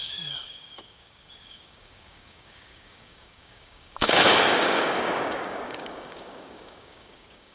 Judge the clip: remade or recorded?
remade